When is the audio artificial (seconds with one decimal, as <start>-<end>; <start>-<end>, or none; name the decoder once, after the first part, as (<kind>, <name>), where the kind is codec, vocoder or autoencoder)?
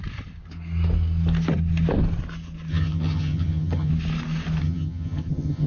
2.7-3.9 (vocoder, HiFi-GAN); 4.6-5.7